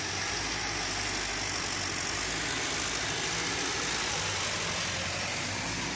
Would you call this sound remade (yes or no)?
no